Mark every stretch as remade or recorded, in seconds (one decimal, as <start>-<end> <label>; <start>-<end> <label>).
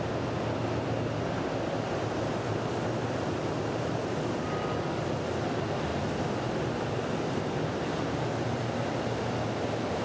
0.0-10.0 recorded